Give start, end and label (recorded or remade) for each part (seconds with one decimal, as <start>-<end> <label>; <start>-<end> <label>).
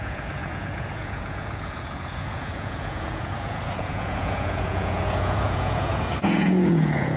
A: 0.0-7.2 remade